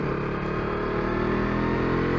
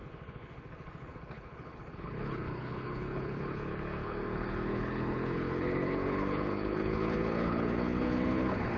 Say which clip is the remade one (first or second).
second